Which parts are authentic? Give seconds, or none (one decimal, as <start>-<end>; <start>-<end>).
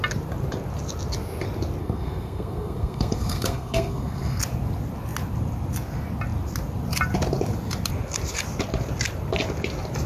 0.0-1.8; 4.4-10.1